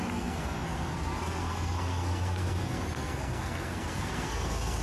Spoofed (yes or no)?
yes